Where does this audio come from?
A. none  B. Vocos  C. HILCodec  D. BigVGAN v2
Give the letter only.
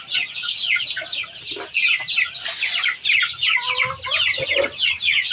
A